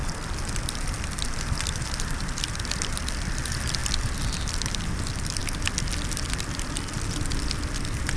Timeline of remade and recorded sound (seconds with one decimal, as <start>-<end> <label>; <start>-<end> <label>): 0.0-2.5 remade; 2.5-8.2 recorded